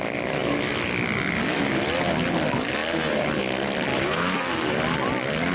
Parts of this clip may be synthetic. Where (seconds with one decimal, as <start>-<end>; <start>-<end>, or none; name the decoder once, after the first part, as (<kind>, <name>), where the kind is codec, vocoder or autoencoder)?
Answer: 3.9-4.7 (autoencoder, DAC-VAE)